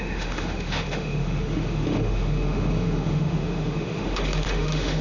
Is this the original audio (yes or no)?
no